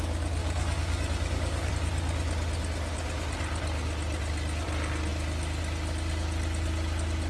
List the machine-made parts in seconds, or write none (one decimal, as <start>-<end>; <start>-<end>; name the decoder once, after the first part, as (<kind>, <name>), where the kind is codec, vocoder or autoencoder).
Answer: 0.4-1.7 (codec, DAC)